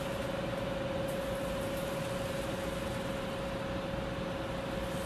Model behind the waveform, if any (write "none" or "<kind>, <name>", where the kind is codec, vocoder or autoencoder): none